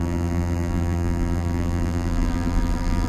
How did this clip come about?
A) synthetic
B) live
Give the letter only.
A